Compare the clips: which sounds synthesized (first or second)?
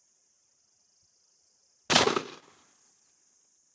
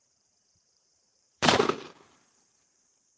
second